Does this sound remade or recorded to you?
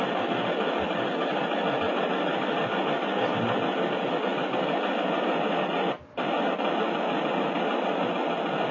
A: recorded